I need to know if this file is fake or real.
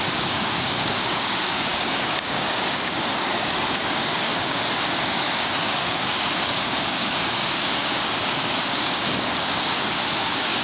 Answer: fake